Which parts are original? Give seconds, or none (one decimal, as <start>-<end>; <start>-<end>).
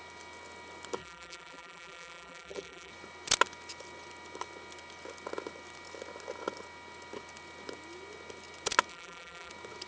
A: 0.0-1.0; 2.9-8.9; 9.5-9.9